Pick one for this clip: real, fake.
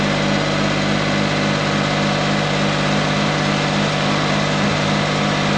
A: real